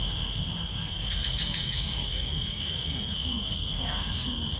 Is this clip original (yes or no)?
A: no